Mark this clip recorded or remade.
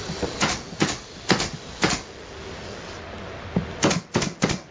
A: recorded